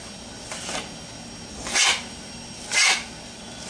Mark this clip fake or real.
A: real